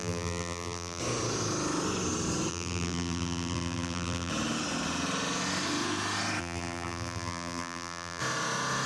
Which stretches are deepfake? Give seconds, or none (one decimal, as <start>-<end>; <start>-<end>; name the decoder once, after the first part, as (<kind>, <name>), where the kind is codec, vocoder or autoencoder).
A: 0.0-1.0 (vocoder, BigVGAN v2); 2.5-4.3; 6.4-8.2